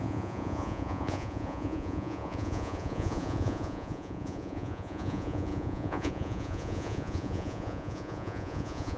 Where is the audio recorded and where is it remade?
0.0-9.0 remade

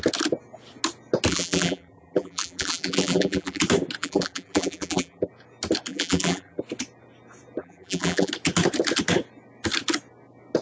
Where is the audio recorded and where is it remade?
0.0-1.3 recorded; 1.3-3.6 remade; 3.6-4.0 recorded; 4.0-5.3 remade; 5.3-5.9 recorded; 5.9-6.6 remade; 6.6-7.6 recorded; 7.6-8.3 remade; 8.3-10.6 recorded

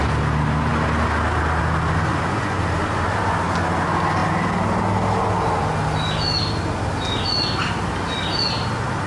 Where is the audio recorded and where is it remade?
0.0-2.1 recorded; 2.1-2.6 remade; 2.6-9.1 recorded

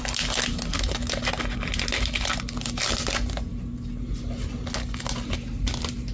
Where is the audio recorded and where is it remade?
0.0-6.1 recorded

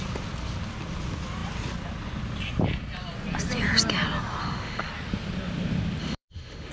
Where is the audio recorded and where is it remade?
0.0-4.4 recorded; 4.4-4.9 remade; 4.9-6.0 recorded; 6.0-6.7 remade